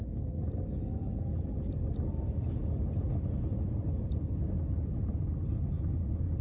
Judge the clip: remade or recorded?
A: recorded